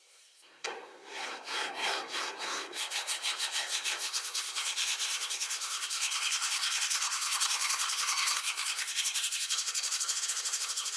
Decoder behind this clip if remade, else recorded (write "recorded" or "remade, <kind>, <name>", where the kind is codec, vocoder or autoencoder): remade, codec, SNAC